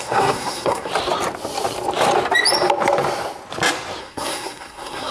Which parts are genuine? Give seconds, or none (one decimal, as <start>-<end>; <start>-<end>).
0.9-4.0